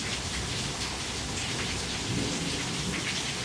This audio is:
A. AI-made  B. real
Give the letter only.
B